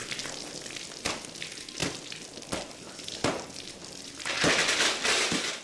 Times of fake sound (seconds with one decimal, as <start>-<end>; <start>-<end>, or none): none